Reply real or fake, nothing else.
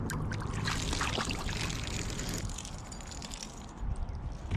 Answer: real